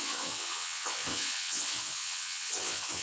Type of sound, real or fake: fake